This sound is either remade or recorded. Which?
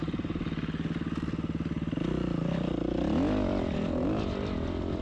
recorded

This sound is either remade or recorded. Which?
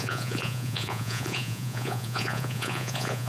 remade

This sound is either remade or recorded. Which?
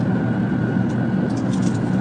recorded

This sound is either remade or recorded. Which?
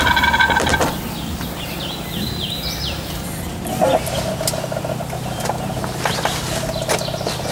recorded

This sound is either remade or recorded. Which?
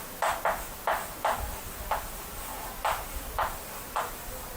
recorded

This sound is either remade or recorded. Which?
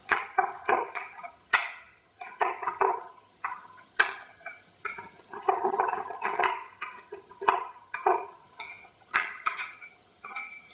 remade